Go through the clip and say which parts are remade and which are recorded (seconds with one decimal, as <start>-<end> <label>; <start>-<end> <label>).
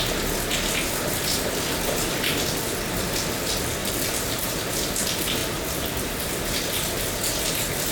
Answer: 0.0-3.8 recorded; 3.8-4.8 remade; 4.8-7.9 recorded